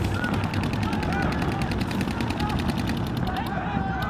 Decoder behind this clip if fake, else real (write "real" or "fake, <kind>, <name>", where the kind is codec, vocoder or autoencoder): real